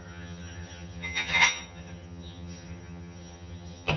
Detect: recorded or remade remade